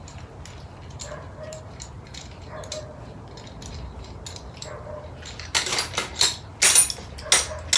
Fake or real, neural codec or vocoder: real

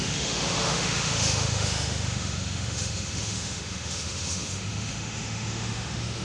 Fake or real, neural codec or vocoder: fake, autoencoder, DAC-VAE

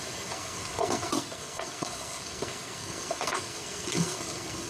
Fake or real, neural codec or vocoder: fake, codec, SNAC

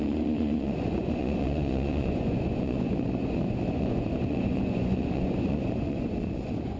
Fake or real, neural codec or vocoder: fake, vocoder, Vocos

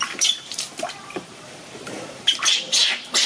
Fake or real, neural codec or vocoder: fake, vocoder, BigVGAN v2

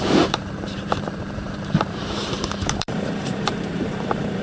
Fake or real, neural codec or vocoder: fake, vocoder, BigVGAN v2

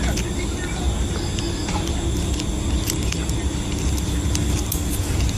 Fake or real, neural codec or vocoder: real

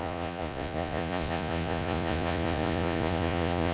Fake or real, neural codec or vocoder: fake, vocoder, Vocos